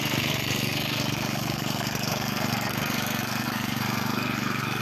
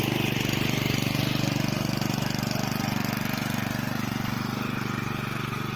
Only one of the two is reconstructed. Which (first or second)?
first